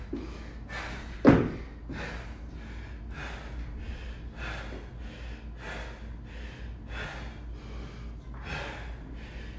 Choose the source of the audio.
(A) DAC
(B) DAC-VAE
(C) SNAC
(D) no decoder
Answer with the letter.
D